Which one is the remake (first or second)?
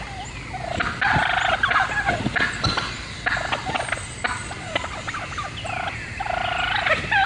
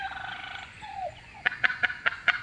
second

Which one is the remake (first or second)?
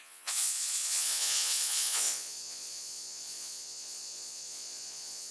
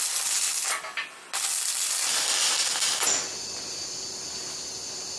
first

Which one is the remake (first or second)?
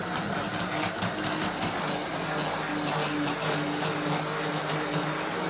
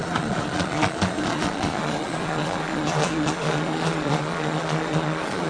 second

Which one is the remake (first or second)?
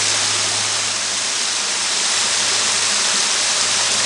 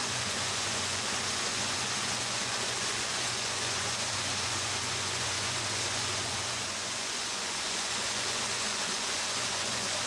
second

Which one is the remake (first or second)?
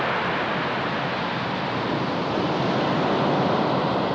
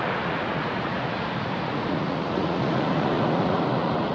second